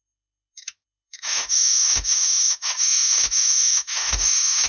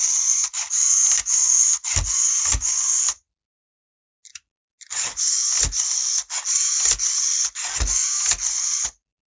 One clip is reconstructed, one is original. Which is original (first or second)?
second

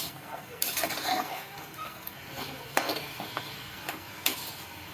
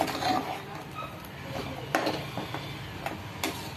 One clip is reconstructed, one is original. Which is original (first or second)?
second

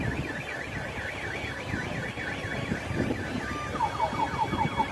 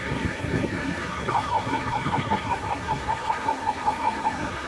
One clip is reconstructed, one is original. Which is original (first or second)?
first